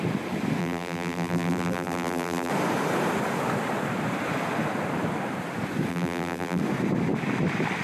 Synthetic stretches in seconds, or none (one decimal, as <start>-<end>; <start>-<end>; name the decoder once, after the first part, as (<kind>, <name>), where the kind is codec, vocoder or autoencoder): 0.6-2.5 (vocoder, BigVGAN v2); 5.9-6.6